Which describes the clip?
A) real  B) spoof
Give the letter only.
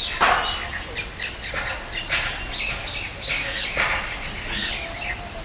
A